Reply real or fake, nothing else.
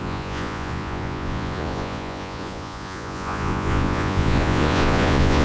fake